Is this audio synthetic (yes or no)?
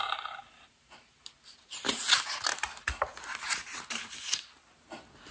no